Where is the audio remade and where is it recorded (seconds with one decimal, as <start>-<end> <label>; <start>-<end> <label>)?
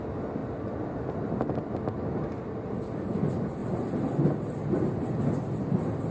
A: 0.0-6.1 recorded